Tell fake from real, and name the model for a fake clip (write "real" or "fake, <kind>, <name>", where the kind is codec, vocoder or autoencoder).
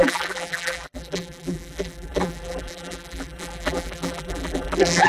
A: fake, vocoder, BigVGAN v2